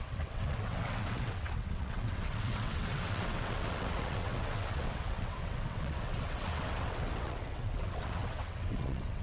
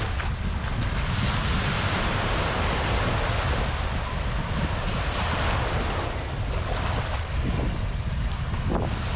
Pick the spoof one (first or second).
first